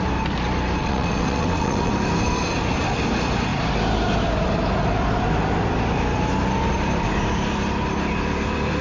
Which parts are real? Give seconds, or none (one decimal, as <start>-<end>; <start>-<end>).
0.0-0.8; 1.9-8.8